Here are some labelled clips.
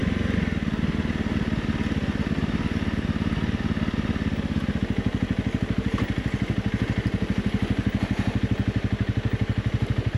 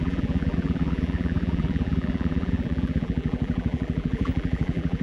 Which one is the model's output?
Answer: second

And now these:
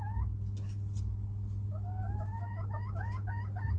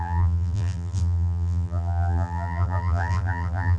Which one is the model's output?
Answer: second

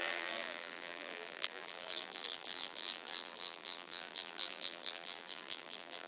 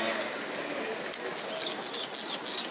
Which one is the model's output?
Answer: first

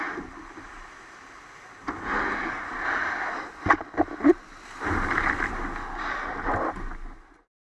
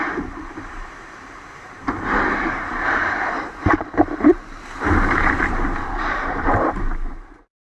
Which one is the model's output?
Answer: second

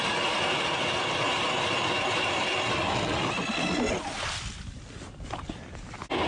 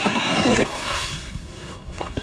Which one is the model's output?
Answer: second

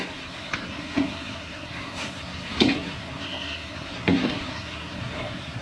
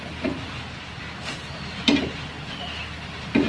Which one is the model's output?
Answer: first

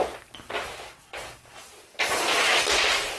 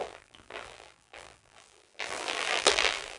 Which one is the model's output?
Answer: second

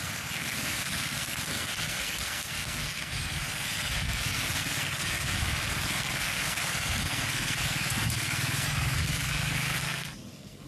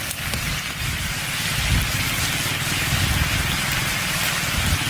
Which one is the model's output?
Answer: first